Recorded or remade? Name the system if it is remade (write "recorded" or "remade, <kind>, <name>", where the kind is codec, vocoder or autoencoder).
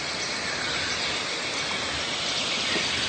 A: recorded